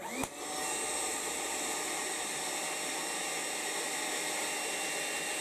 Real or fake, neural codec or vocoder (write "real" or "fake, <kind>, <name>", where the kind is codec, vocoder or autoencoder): real